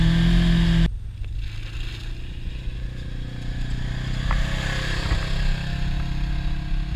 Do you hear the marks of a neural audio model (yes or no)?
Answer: no